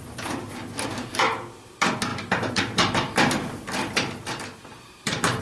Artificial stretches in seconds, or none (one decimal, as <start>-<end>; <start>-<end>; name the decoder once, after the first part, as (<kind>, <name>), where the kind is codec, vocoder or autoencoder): 2.1-5.4 (vocoder, BigVGAN v2)